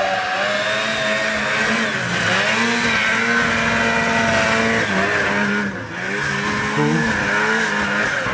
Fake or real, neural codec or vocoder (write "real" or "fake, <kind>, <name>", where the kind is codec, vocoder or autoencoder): real